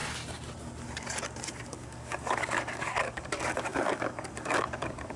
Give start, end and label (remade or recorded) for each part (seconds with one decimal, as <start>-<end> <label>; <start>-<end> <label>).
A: 0.0-1.7 recorded; 1.7-5.2 remade